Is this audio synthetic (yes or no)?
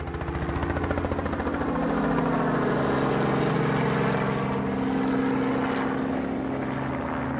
no